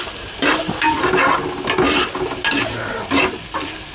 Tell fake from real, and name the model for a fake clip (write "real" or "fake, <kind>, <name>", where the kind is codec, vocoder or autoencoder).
real